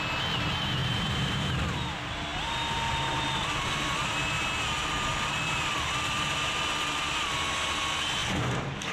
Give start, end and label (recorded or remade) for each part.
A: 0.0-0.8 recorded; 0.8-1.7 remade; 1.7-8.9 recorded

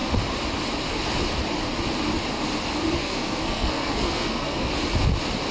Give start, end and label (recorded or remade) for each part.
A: 0.0-3.0 recorded; 3.0-4.7 remade; 4.7-5.5 recorded

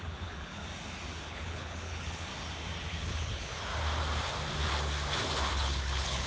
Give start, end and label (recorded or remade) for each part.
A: 0.0-0.6 remade; 0.6-1.3 recorded; 1.3-2.3 remade; 2.3-2.9 recorded; 2.9-3.7 remade; 3.7-5.5 recorded; 5.5-6.3 remade

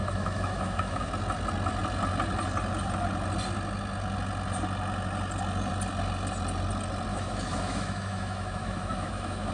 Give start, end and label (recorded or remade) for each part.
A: 0.0-1.1 remade; 1.1-7.1 recorded; 7.1-9.5 remade

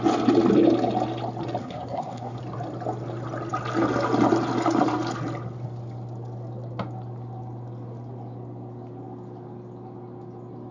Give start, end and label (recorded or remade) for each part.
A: 0.0-1.6 recorded; 1.6-2.4 remade; 2.4-10.7 recorded

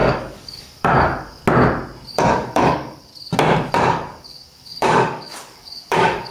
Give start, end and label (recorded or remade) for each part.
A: 0.0-1.4 remade; 1.4-2.1 recorded; 2.1-3.1 remade; 3.1-3.7 recorded; 3.7-6.3 remade